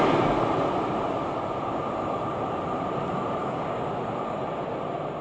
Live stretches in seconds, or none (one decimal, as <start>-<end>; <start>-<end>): 0.0-3.4; 3.9-5.2